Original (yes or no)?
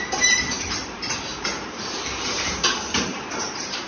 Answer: no